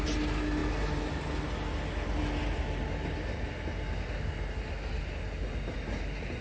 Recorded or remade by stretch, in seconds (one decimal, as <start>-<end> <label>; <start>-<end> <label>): 0.0-6.4 recorded